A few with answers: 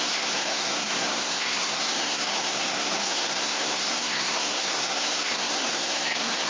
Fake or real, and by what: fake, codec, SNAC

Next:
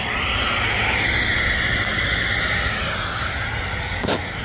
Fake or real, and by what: real